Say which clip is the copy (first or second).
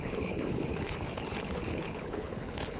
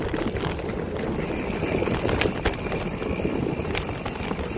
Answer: first